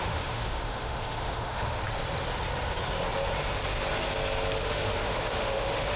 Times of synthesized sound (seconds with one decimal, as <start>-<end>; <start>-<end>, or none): 0.0-1.8; 4.6-6.0